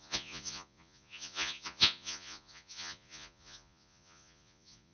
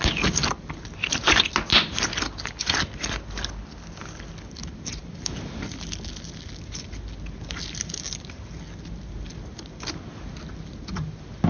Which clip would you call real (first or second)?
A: second